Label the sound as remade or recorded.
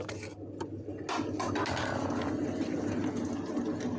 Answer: recorded